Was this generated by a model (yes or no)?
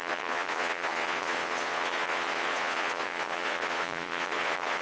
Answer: yes